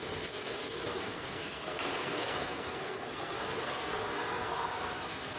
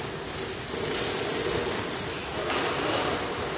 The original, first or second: second